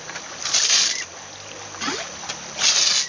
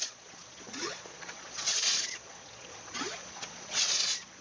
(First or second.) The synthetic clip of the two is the second